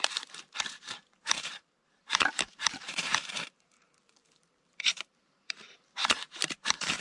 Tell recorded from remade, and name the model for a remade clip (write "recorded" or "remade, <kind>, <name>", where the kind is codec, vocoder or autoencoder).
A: remade, vocoder, BigVGAN v2